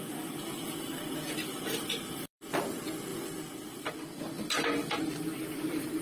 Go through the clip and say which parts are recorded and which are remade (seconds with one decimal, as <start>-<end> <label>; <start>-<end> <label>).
0.0-1.4 recorded; 1.4-2.6 remade; 2.6-6.0 recorded